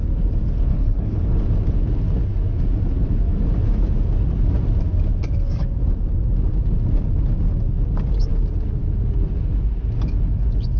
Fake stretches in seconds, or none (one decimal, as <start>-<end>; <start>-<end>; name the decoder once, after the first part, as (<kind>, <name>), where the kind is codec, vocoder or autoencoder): 0.7-1.2 (codec, HILCodec)